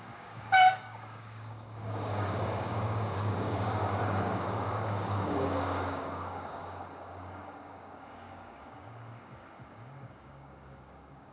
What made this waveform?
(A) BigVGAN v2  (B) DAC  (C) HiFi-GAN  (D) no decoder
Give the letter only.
B